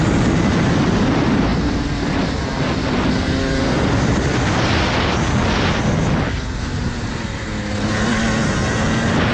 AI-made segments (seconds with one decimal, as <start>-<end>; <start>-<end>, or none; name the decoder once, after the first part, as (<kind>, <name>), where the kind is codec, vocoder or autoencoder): none